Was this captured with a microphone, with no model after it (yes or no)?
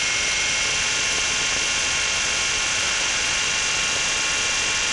yes